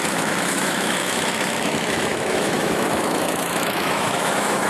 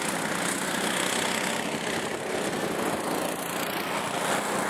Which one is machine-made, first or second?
first